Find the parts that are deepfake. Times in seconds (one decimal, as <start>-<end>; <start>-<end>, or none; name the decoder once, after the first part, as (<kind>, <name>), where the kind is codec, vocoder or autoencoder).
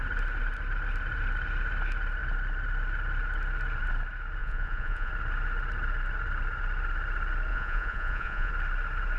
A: 4.4-5.1 (vocoder, Vocos); 7.5-8.5